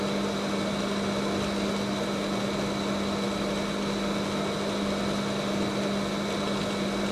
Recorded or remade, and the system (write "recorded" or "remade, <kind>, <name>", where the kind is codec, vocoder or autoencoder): recorded